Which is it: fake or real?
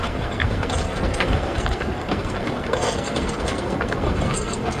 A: fake